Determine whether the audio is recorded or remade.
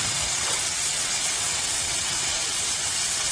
remade